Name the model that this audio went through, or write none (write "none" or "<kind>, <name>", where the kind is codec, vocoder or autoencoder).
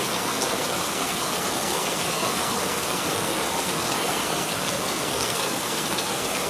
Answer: codec, SNAC